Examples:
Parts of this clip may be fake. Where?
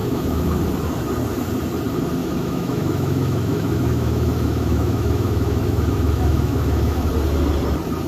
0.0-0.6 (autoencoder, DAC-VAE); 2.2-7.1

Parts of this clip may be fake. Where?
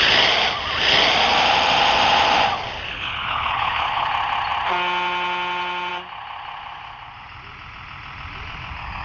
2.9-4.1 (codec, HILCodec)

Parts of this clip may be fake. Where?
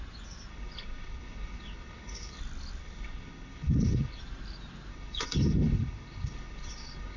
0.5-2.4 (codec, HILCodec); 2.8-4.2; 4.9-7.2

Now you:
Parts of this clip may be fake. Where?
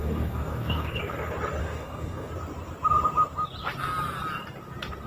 0.0-1.0 (codec, DAC); 1.6-2.3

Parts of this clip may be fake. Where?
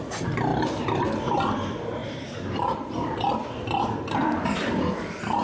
2.0-4.5 (vocoder, BigVGAN v2)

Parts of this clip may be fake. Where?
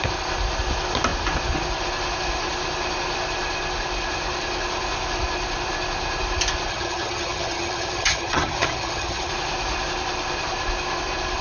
6.7-9.3 (vocoder, HiFi-GAN)